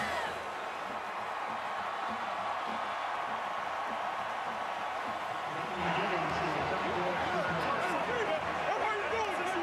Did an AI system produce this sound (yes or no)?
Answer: no